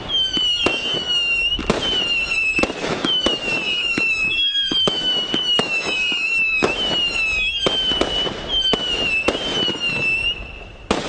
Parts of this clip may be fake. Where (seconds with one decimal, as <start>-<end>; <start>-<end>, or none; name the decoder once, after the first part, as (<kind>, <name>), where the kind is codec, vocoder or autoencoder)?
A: 0.7-1.6 (autoencoder, DAC-VAE); 2.8-6.9